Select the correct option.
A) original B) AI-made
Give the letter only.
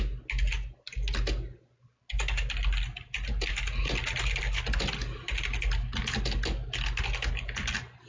A